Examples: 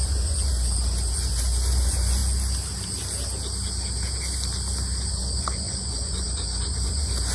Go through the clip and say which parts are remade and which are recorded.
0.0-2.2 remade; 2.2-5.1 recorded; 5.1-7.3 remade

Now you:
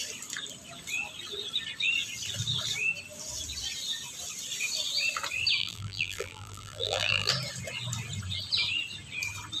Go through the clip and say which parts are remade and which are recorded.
0.0-5.6 recorded; 5.6-7.3 remade; 7.3-9.6 recorded

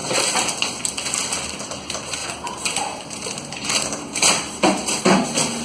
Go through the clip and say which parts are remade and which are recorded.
0.0-2.2 recorded; 2.2-5.0 remade; 5.0-5.6 recorded

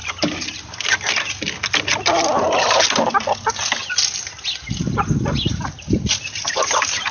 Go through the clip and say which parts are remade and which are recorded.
0.0-7.1 recorded

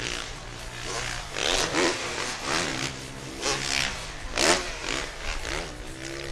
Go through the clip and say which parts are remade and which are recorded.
0.0-6.3 recorded